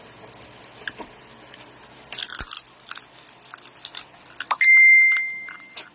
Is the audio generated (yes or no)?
no